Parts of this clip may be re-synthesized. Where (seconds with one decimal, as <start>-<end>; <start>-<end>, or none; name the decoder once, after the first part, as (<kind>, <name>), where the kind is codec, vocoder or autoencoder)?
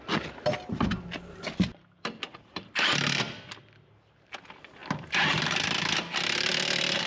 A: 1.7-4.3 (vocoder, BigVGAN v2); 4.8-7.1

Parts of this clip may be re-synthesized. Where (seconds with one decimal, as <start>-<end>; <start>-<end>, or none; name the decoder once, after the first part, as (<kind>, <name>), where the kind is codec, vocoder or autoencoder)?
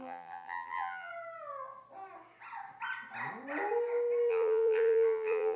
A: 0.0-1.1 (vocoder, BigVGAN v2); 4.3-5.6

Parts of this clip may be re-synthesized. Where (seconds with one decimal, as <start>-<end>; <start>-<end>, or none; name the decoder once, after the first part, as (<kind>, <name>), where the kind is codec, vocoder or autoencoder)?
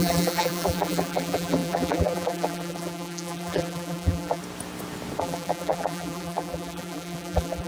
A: 0.0-4.4 (vocoder, BigVGAN v2); 5.2-7.7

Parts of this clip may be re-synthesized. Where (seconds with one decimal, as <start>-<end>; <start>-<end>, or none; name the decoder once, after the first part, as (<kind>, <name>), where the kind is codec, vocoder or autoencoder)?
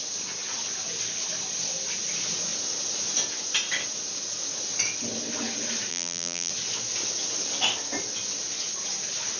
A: 5.9-6.5 (vocoder, BigVGAN v2)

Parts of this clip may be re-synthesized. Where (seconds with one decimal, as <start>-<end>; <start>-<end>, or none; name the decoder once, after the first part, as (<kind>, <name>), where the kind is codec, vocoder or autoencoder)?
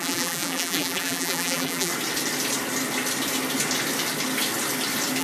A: 0.0-1.9 (vocoder, BigVGAN v2)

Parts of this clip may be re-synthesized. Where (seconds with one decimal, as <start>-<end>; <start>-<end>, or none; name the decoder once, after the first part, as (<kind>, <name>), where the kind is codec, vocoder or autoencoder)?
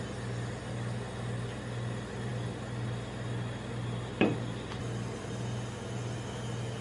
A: none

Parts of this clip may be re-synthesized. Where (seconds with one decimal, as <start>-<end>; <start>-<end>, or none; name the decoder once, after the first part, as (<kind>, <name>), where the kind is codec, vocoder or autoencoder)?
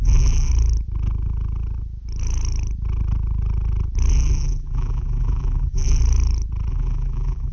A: 0.0-0.5 (vocoder, BigVGAN v2); 4.1-6.0; 6.7-7.5